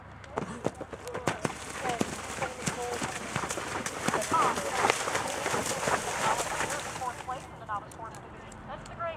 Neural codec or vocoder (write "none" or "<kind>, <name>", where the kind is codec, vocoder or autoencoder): none